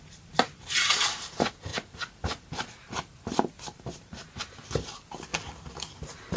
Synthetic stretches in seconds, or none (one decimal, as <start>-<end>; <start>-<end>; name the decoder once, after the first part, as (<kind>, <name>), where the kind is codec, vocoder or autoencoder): 0.0-5.3 (vocoder, BigVGAN v2)